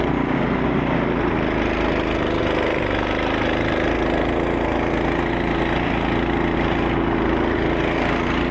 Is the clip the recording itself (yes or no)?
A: yes